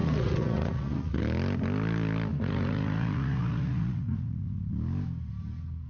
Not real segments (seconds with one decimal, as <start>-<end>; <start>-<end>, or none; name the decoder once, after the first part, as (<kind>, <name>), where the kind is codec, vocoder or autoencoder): 0.0-1.2 (vocoder, Vocos); 2.3-4.7